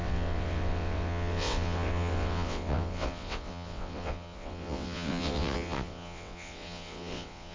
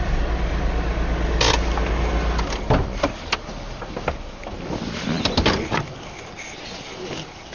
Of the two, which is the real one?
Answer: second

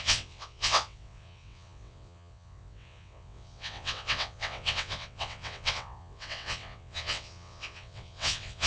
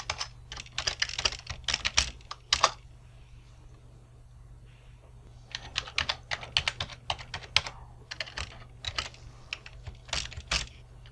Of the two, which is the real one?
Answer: second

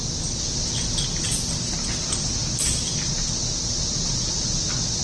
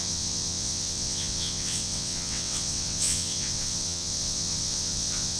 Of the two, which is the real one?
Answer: first